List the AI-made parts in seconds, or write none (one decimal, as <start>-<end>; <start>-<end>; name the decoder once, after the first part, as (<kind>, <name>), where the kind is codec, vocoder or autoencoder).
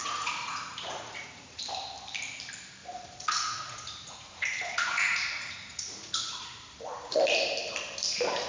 0.0-1.6 (vocoder, Vocos); 2.8-7.2